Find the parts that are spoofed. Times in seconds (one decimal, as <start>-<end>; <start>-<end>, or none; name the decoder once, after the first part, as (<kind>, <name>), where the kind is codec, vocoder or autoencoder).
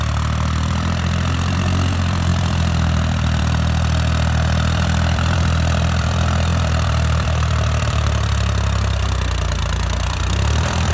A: 0.0-10.9 (vocoder, BigVGAN v2)